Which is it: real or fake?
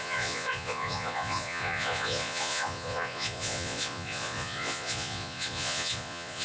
fake